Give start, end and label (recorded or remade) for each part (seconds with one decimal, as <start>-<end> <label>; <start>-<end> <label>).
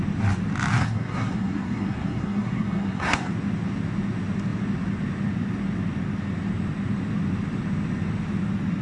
0.0-0.8 recorded; 0.8-3.3 remade; 3.3-8.8 recorded